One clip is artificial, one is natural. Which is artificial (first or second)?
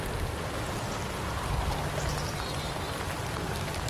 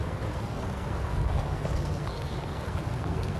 second